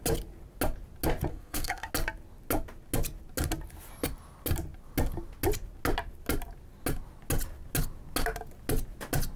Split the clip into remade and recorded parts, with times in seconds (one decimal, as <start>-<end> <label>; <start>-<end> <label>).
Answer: 0.0-1.3 recorded; 1.3-1.9 remade; 1.9-9.4 recorded